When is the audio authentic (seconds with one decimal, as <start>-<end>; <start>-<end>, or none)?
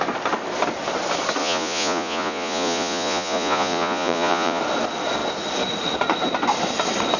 0.0-1.4; 4.6-7.2